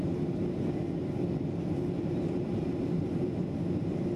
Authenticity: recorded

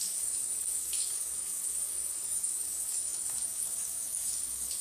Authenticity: remade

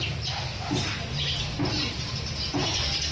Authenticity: recorded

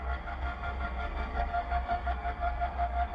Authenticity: remade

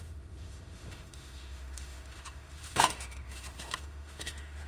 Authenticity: remade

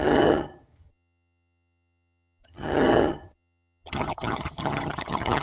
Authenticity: remade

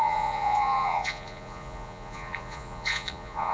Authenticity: remade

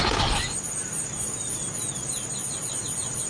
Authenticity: recorded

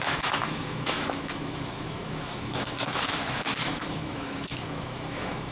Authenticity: remade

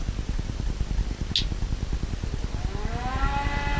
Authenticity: recorded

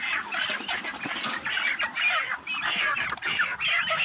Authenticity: recorded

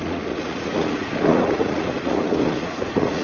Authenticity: remade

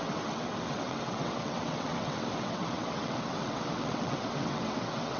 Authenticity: remade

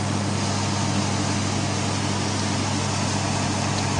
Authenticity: recorded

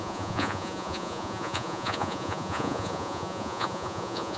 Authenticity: remade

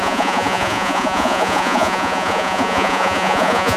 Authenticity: remade